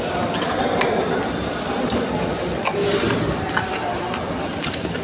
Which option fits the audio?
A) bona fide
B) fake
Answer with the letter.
A